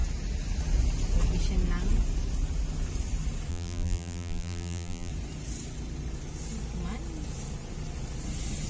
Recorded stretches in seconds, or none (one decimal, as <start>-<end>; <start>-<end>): 0.0-3.5; 5.1-8.7